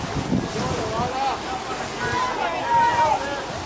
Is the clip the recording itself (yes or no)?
yes